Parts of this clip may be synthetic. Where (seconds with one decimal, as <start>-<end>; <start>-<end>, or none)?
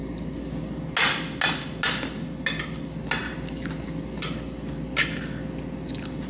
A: none